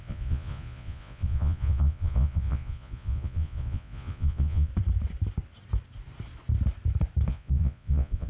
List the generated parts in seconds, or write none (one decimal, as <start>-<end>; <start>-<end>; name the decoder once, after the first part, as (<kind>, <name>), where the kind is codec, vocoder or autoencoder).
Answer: 0.0-4.7 (vocoder, Vocos); 7.3-8.3